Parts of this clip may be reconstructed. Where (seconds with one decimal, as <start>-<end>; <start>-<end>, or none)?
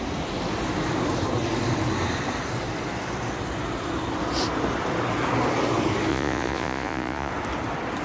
6.1-7.3